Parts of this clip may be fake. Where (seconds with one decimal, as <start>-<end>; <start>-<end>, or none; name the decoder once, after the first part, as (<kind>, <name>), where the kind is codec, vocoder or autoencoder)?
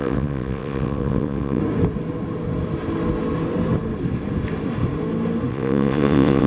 0.0-1.6 (vocoder, WaveNeXt); 5.5-6.5